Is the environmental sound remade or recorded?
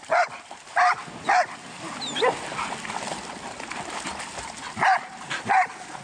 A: recorded